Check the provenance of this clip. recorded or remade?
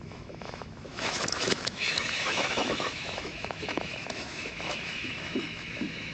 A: remade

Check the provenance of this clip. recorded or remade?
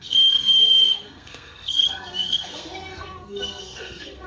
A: remade